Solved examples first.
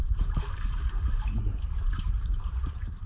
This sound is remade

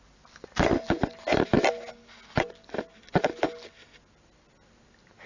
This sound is recorded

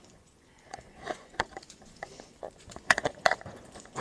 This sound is remade